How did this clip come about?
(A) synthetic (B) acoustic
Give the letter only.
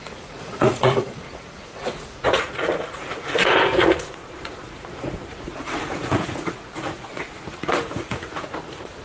A